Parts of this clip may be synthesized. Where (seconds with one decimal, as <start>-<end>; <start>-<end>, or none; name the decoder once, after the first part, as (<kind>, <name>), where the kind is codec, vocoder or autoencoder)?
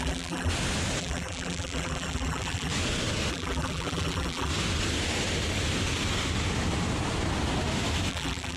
0.0-0.5 (vocoder, BigVGAN v2); 1.0-2.7; 3.3-4.5; 8.1-8.6